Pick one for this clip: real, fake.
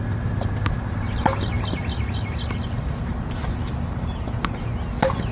real